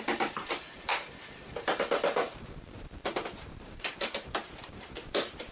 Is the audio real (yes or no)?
no